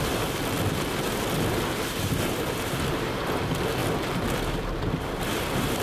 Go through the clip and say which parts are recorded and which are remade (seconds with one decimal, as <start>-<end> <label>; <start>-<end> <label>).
0.0-3.8 recorded; 3.8-5.8 remade

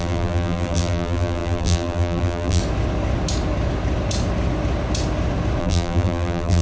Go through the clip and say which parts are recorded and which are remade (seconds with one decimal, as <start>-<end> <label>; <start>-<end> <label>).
0.0-2.6 remade; 2.6-5.6 recorded; 5.6-6.6 remade